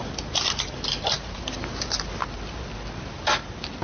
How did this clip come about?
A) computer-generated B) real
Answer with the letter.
B